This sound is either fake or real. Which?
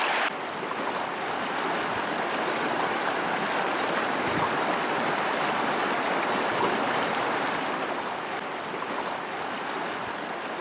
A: real